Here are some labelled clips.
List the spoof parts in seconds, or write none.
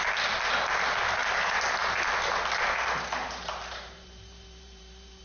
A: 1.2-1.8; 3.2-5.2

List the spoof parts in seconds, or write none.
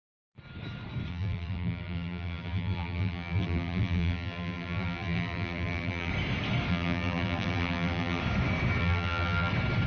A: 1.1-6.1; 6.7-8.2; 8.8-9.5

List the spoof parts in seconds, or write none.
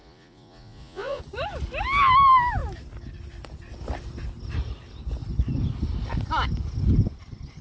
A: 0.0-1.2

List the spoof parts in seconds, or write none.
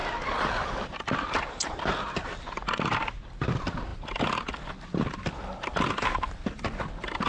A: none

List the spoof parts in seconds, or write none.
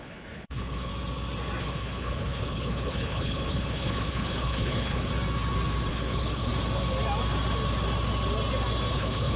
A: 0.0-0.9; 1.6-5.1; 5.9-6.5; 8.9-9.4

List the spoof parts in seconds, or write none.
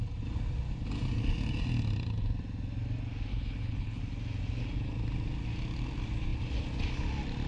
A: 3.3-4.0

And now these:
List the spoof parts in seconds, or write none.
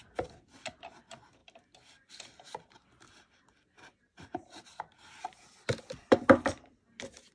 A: none